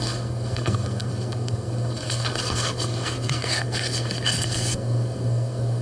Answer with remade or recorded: remade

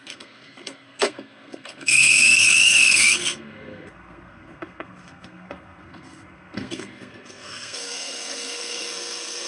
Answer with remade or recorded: remade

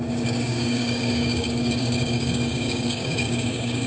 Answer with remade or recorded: remade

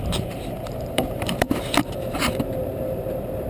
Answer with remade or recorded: remade